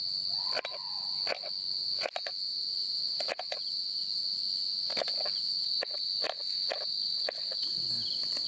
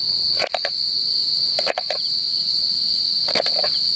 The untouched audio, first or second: first